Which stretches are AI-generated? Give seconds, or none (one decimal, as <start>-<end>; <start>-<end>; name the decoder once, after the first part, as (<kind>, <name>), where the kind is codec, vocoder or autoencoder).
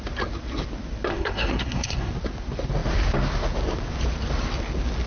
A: 1.1-2.1 (codec, SNAC)